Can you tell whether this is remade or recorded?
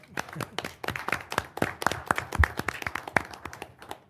recorded